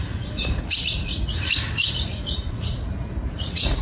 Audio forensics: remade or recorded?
remade